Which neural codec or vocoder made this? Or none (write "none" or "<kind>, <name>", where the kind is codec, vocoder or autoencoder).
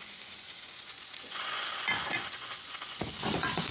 vocoder, Vocos